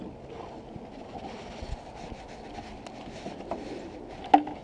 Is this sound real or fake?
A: real